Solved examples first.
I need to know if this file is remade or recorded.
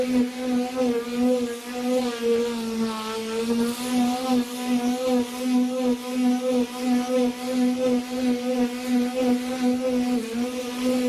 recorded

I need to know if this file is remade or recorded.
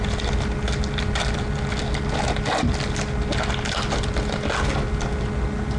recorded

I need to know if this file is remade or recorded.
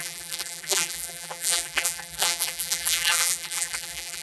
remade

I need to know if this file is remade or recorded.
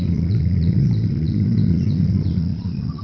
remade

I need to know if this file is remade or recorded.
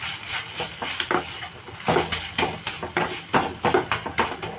recorded